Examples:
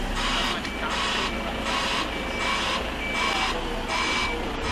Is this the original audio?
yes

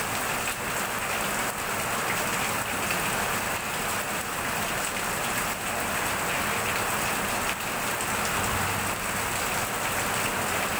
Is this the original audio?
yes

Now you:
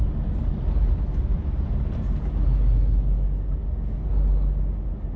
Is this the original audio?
yes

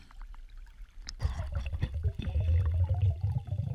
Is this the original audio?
no